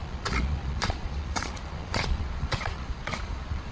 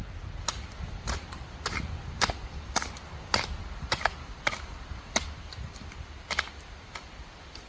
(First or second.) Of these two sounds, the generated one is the first